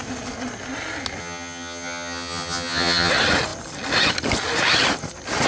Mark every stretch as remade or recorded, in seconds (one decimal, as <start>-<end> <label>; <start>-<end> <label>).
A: 0.0-1.2 recorded; 1.2-3.1 remade; 3.1-5.5 recorded